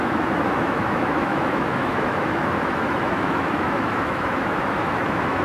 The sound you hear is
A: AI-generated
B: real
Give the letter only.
A